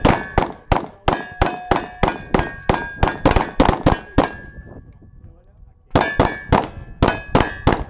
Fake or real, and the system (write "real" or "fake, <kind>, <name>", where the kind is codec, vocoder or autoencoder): real